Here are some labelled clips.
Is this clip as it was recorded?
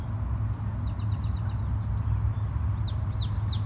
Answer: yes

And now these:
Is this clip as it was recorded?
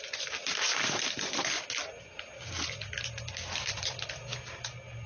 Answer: yes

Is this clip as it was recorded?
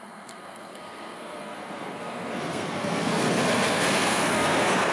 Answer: no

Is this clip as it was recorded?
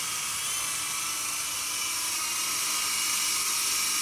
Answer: yes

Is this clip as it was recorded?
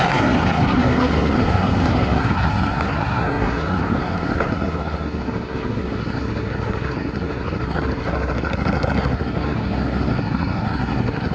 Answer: no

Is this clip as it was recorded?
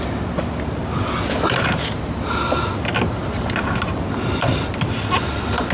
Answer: yes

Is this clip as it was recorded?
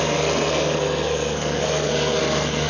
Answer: no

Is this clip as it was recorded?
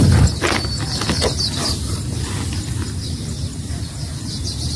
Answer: yes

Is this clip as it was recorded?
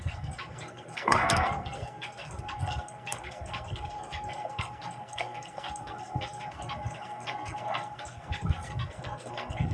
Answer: no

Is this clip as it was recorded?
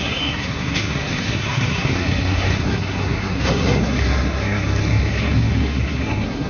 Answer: no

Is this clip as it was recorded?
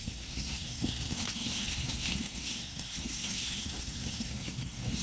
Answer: no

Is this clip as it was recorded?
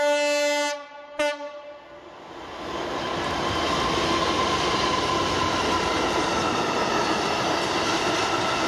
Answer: yes